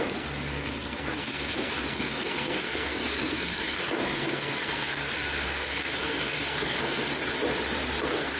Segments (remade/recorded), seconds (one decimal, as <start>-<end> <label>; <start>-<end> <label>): 0.0-7.1 remade; 7.1-8.0 recorded; 8.0-8.4 remade